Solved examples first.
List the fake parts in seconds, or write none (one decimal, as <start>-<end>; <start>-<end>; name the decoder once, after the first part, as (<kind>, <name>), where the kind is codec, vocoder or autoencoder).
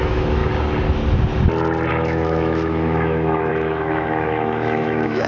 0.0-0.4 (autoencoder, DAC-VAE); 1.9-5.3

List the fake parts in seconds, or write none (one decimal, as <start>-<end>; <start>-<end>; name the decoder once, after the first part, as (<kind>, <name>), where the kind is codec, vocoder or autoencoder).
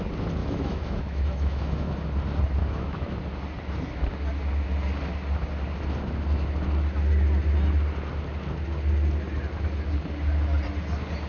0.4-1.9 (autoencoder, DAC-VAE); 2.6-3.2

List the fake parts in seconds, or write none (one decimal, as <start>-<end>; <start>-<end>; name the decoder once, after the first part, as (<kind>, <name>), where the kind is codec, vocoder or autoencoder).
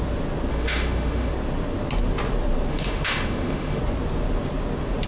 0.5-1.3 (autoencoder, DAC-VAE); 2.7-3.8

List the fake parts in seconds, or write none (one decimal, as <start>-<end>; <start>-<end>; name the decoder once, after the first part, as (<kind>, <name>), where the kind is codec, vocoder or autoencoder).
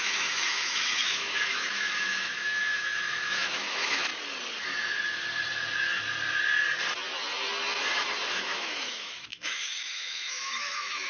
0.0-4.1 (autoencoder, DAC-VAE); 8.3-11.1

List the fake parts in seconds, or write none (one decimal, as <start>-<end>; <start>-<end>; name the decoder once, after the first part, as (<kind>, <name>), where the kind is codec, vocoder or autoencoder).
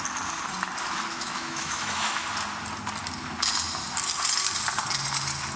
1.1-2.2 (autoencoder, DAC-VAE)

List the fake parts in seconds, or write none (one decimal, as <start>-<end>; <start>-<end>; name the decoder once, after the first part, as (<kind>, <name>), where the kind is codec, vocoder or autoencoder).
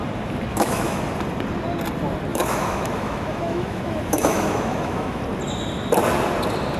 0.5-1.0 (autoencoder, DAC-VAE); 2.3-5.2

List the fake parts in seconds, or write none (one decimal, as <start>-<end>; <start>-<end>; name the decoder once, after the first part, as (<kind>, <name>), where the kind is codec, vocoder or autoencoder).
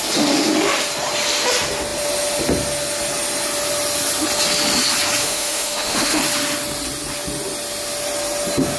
5.2-6.2 (autoencoder, DAC-VAE)